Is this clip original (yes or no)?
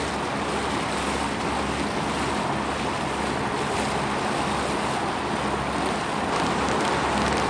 yes